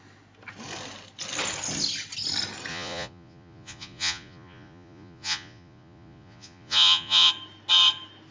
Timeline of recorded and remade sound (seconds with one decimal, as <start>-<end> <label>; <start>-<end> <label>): 0.0-2.7 recorded; 2.7-7.3 remade; 7.3-8.3 recorded